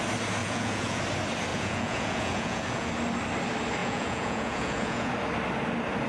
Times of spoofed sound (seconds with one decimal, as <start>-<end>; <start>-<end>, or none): 0.4-1.0; 1.5-2.9; 3.8-5.1